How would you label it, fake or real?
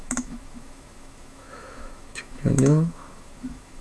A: fake